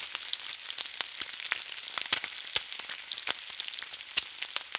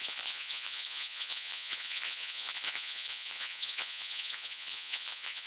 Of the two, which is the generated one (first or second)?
second